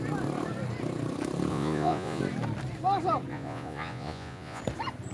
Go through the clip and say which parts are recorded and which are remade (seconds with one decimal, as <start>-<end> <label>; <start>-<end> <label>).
0.0-1.5 recorded; 1.5-2.2 remade; 2.2-3.3 recorded; 3.3-4.6 remade; 4.6-5.1 recorded